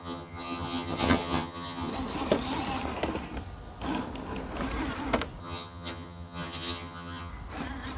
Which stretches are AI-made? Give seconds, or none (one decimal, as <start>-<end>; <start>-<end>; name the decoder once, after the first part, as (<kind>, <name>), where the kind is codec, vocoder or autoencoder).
0.0-1.9 (vocoder, HiFi-GAN); 5.4-7.3